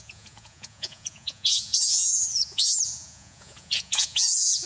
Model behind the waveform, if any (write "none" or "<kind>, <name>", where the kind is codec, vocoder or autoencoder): vocoder, Vocos